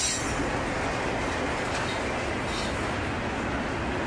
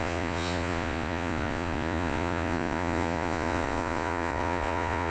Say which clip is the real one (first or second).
first